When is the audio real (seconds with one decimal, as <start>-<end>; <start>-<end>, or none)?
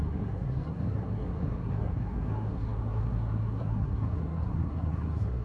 none